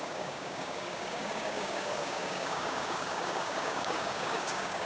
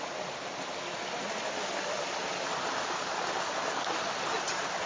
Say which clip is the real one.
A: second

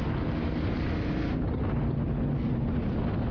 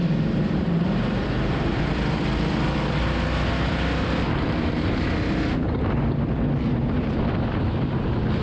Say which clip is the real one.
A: first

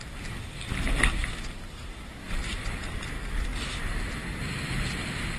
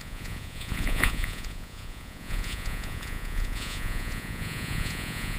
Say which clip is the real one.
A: first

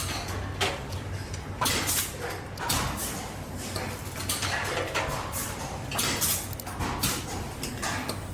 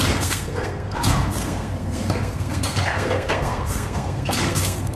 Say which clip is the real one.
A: first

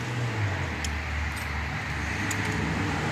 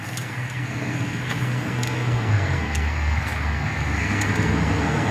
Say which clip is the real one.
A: first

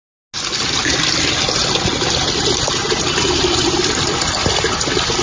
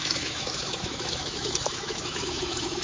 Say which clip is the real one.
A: first